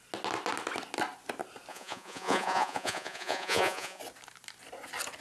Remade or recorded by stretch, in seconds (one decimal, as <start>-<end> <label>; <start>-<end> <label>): 0.0-1.7 recorded; 1.7-4.0 remade; 4.0-5.2 recorded